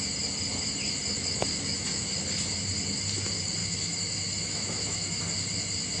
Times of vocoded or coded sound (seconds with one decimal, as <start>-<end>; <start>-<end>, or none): 1.1-2.1; 3.6-5.2